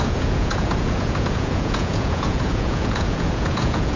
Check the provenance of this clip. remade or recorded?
remade